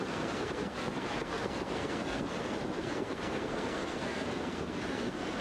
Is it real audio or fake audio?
fake